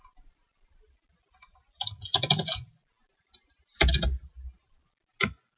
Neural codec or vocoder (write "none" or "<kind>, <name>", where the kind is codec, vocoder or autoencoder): none